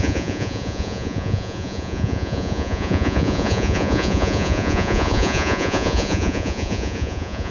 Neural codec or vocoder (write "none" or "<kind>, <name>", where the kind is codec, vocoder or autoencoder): vocoder, Vocos